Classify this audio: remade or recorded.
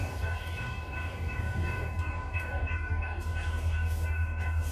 remade